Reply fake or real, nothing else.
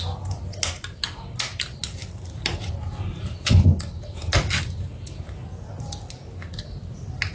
real